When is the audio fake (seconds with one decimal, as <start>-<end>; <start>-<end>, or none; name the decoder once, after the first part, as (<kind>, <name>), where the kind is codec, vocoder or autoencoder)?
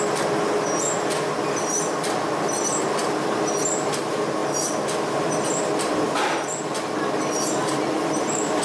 none